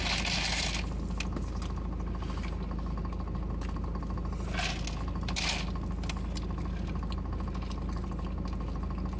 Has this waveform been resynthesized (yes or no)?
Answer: no